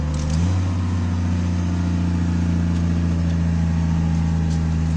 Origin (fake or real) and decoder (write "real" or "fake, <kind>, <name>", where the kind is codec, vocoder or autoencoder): real